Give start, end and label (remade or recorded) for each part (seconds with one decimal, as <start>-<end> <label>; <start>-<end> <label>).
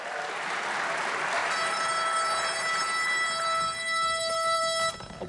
0.0-1.4 recorded; 1.4-4.6 remade; 4.6-5.3 recorded